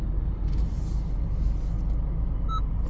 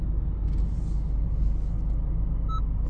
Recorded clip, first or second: second